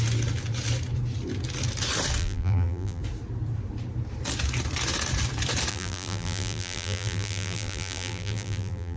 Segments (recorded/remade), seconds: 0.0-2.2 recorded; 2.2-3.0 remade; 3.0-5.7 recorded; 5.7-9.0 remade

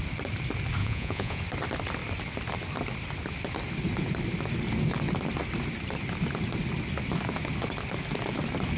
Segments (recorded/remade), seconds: 0.0-0.8 recorded; 0.8-1.4 remade; 1.4-8.8 recorded